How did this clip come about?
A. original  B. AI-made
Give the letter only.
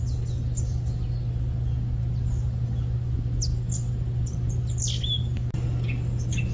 A